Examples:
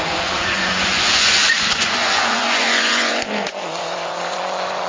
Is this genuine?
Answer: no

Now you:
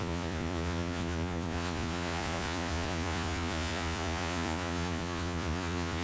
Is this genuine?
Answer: no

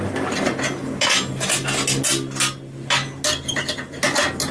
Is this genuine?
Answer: yes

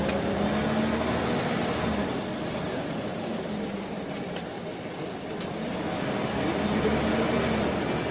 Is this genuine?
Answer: yes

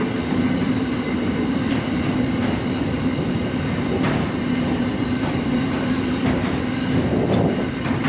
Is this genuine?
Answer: yes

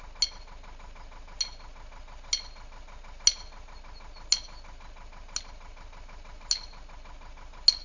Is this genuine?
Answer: yes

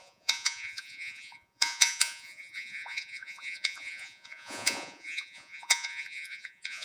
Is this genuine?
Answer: no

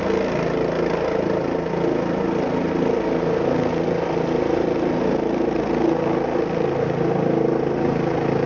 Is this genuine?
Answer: yes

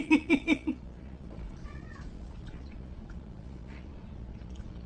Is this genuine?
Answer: no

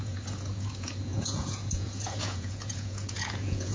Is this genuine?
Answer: no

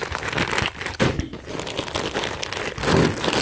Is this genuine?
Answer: yes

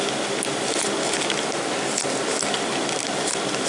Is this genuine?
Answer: yes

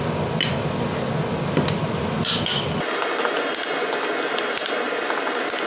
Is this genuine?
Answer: yes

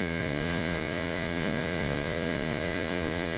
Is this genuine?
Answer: no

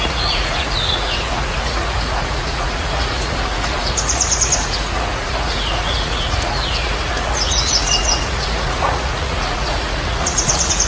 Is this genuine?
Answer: no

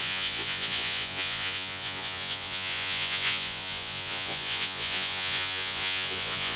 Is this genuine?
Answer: no